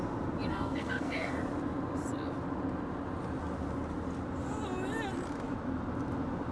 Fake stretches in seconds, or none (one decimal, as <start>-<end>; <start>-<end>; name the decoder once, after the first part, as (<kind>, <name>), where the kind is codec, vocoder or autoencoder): 0.5-1.4 (codec, SNAC)